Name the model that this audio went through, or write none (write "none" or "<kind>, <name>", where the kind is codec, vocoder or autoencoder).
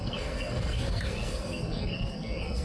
codec, SNAC